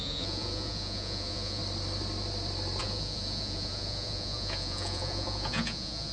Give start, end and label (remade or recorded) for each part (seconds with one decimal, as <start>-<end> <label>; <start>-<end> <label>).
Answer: 0.0-1.6 remade; 1.6-2.8 recorded; 2.8-6.1 remade